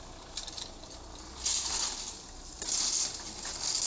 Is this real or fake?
real